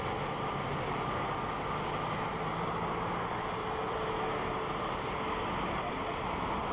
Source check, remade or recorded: recorded